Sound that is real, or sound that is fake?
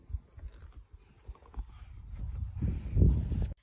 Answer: real